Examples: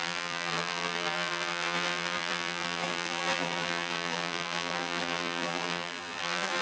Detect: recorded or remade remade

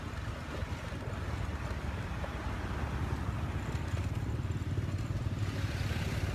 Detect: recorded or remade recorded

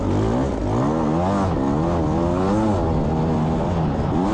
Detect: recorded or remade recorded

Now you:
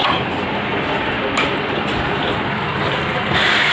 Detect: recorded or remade recorded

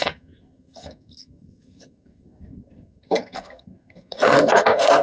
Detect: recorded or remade remade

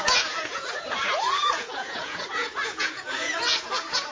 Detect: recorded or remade remade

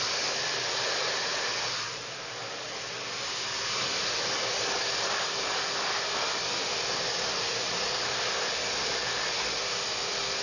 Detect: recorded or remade recorded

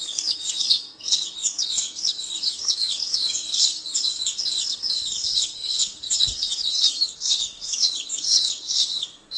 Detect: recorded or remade remade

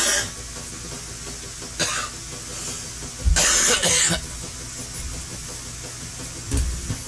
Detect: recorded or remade recorded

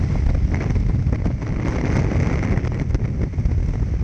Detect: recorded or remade recorded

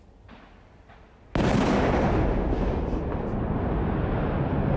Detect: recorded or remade recorded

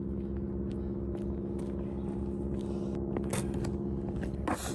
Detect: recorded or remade recorded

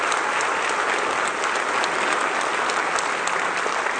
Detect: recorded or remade recorded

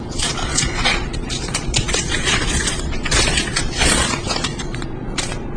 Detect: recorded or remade remade